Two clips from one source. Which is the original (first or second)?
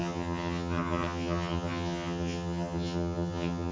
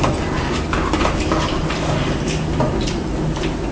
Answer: second